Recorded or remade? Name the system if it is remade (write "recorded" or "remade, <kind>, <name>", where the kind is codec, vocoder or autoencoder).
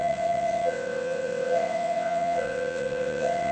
remade, vocoder, WaveNeXt